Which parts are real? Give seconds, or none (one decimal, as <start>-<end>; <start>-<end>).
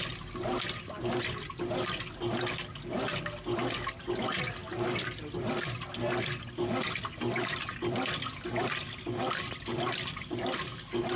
0.0-11.2